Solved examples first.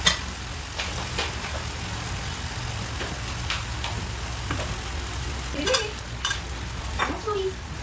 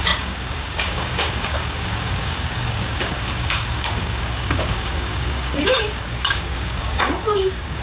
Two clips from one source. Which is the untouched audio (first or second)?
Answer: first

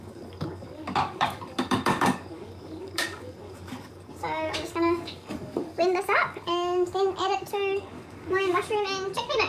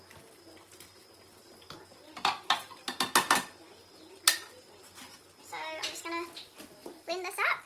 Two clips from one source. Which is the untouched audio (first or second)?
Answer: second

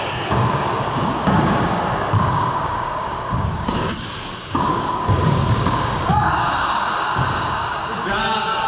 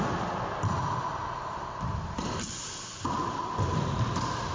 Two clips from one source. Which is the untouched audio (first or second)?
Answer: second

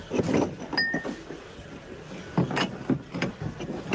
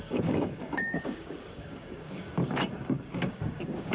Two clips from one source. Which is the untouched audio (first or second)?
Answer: first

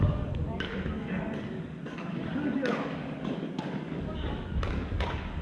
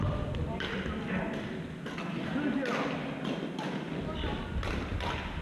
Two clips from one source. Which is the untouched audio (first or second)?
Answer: second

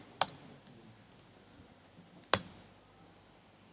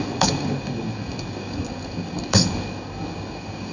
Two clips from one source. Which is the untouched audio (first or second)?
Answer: first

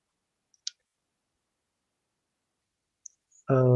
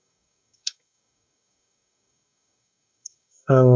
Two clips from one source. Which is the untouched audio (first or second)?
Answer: first